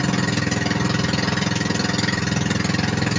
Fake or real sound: real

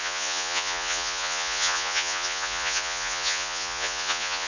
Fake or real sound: fake